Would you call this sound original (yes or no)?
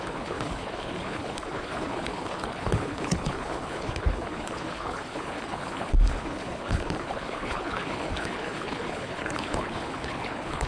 no